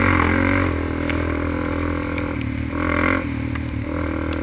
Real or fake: real